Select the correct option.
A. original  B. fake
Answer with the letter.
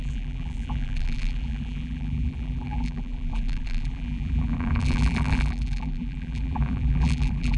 B